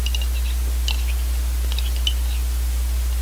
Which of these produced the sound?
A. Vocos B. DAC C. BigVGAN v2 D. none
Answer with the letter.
D